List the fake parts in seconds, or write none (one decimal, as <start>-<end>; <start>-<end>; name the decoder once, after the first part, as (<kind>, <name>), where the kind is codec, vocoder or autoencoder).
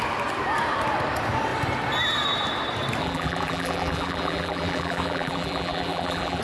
3.0-6.4 (vocoder, BigVGAN v2)